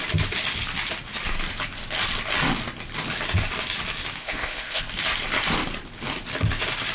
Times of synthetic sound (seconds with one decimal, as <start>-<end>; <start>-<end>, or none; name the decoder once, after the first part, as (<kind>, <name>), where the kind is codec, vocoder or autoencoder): 4.2-4.8 (codec, ZipCodec)